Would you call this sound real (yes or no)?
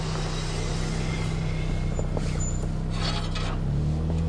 yes